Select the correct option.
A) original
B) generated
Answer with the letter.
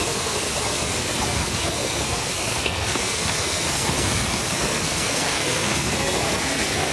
B